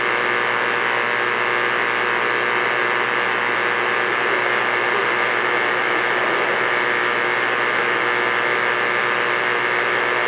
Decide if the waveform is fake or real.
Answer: real